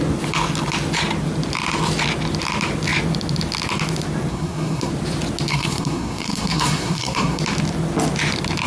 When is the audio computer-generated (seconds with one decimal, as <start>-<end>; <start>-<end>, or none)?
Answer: 4.3-4.9; 5.5-7.4